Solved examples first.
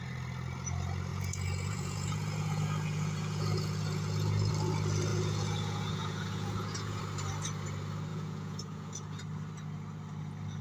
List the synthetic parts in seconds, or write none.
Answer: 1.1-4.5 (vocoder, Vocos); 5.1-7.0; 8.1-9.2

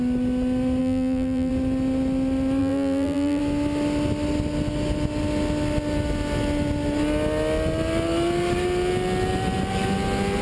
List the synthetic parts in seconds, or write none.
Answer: 0.8-1.5 (vocoder, BigVGAN v2); 2.6-3.4

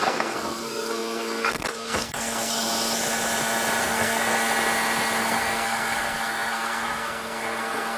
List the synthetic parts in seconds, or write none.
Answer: 0.0-2.7 (codec, SNAC); 3.8-4.3; 5.2-8.0

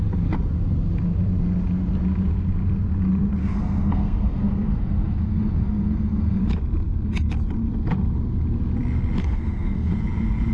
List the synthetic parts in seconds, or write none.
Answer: 3.4-6.4 (codec, SNAC); 9.2-9.9